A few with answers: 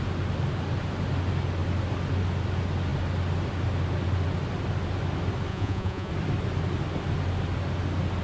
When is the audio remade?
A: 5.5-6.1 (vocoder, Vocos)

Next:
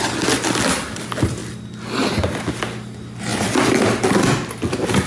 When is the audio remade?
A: none